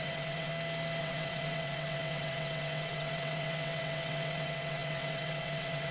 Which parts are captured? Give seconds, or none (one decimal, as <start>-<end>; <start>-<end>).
0.5-1.0